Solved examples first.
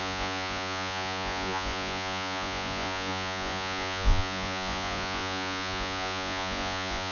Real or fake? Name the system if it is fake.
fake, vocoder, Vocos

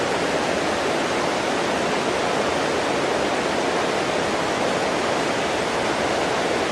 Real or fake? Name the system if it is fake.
real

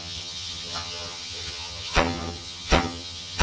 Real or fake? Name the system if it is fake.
fake, vocoder, HiFi-GAN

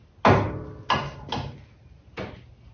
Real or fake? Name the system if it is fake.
real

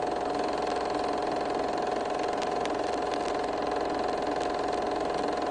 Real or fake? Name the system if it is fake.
real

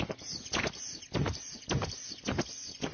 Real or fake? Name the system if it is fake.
real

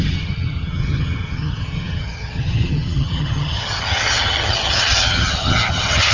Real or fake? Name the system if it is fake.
fake, vocoder, HiFi-GAN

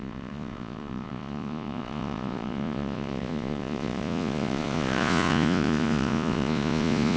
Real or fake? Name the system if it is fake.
fake, vocoder, Vocos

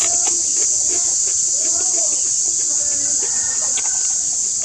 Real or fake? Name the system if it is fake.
real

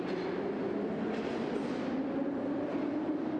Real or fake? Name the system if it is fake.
real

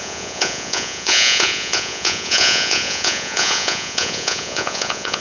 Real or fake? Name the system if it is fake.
fake, vocoder, Vocos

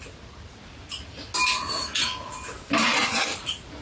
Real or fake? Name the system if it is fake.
real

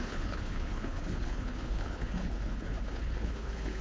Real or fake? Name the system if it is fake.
fake, codec, HILCodec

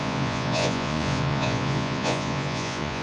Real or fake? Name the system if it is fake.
fake, vocoder, Vocos